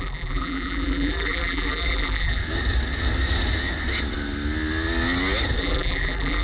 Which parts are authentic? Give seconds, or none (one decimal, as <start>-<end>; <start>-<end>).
2.4-5.6